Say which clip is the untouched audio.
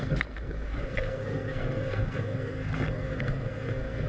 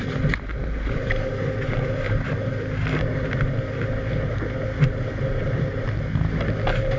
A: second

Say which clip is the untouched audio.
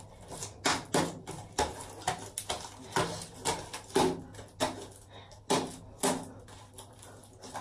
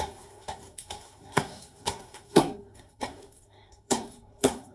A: first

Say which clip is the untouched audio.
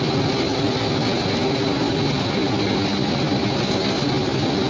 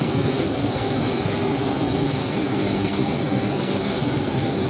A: first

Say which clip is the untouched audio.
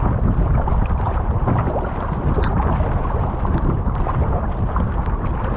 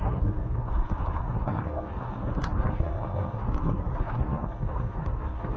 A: first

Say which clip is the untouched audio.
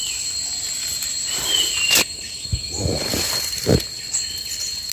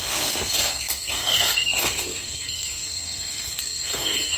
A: first